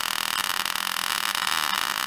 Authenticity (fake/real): real